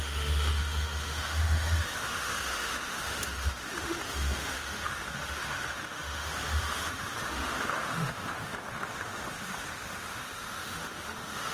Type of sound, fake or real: fake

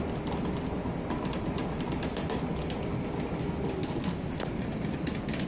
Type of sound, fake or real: real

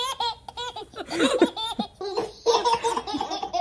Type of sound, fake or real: real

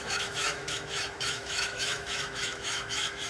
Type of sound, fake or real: fake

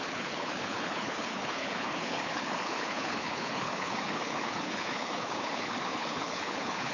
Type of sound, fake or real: fake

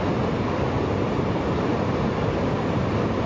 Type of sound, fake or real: real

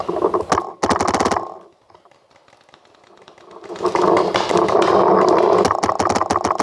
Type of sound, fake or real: real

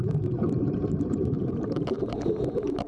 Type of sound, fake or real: fake